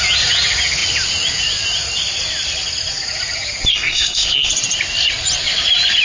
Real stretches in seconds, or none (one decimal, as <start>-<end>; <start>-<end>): 0.0-3.7; 4.5-6.0